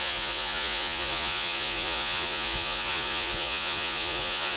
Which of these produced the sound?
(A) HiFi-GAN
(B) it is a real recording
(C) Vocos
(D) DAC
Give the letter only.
C